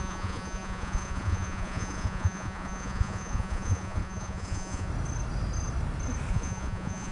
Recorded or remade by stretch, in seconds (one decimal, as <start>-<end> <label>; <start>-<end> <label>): 0.0-4.9 remade; 4.9-6.3 recorded; 6.3-7.1 remade